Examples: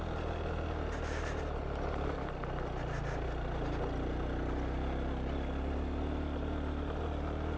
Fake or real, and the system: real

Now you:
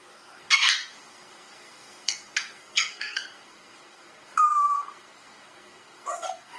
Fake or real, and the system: fake, codec, SNAC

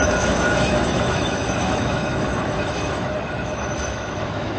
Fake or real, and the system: fake, autoencoder, DAC-VAE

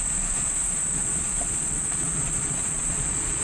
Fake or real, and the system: fake, vocoder, Vocos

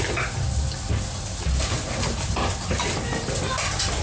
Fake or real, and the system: real